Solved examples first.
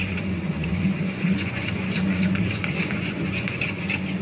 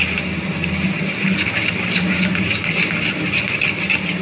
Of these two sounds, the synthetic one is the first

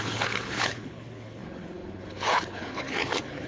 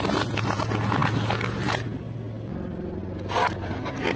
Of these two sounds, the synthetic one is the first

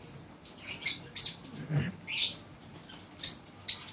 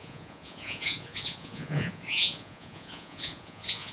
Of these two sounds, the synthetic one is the second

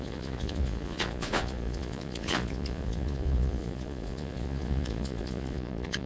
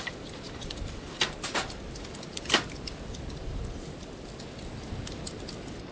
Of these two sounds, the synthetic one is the first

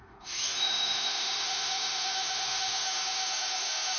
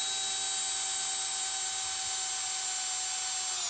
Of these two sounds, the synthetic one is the first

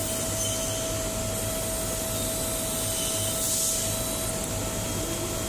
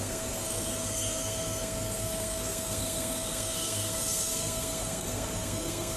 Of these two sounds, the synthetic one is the second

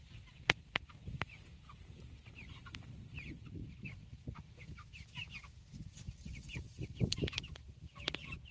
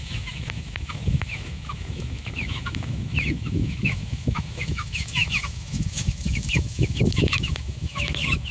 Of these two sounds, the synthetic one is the second